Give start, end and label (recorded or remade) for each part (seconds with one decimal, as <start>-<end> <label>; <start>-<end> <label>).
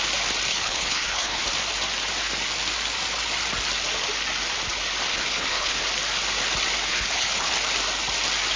0.0-0.5 recorded; 0.5-1.4 remade; 1.4-5.1 recorded; 5.1-5.8 remade; 5.8-6.9 recorded; 6.9-7.5 remade; 7.5-8.6 recorded